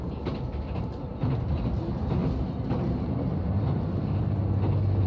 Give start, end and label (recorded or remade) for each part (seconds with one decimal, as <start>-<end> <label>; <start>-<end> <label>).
0.0-2.2 recorded; 2.2-4.2 remade; 4.2-5.1 recorded